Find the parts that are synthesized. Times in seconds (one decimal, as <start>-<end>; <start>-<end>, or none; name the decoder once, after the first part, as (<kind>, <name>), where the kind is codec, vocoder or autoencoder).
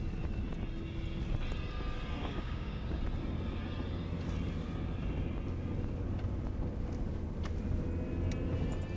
2.2-3.0 (codec, DAC)